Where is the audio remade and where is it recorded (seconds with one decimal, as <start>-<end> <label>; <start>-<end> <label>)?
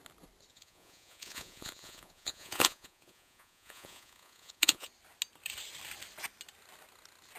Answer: 0.0-0.5 recorded; 0.5-4.9 remade; 4.9-7.4 recorded